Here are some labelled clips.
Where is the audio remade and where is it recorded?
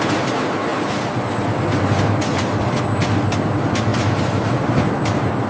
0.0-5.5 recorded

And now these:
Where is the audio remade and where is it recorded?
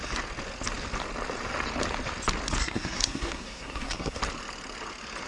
0.0-2.6 recorded; 2.6-4.2 remade; 4.2-5.3 recorded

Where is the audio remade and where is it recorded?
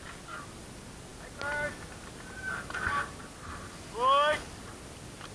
0.0-5.3 recorded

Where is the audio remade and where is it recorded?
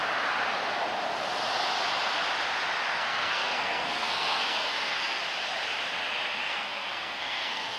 0.0-2.9 recorded; 2.9-5.2 remade; 5.2-6.4 recorded; 6.4-7.8 remade